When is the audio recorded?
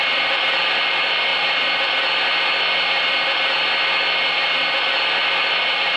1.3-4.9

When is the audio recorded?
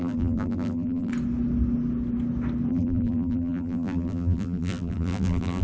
1.1-2.7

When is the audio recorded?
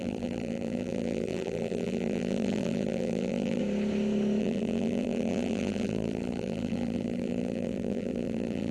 3.6-4.4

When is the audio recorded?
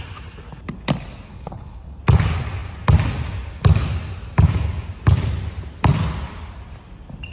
0.0-1.3; 2.0-7.3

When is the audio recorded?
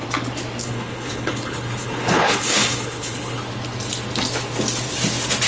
0.0-0.6; 3.4-5.5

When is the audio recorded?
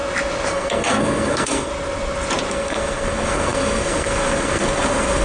0.0-0.5; 1.7-2.5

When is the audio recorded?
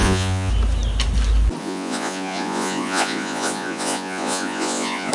0.5-1.6